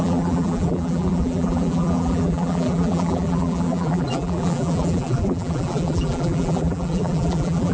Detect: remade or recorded remade